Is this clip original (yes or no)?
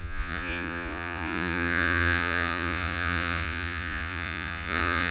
no